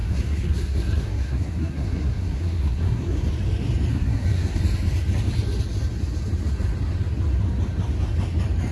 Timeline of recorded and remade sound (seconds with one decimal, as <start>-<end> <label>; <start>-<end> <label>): 0.0-3.3 remade; 3.3-3.9 recorded; 3.9-4.6 remade; 4.6-8.7 recorded